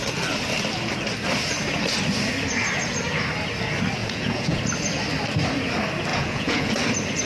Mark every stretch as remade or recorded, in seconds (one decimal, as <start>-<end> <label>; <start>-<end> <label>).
0.0-4.0 recorded; 4.0-4.6 remade; 4.6-6.1 recorded; 6.1-6.7 remade; 6.7-7.3 recorded